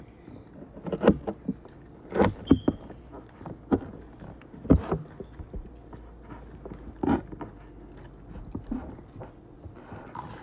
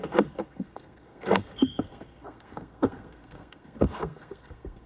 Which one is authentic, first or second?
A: first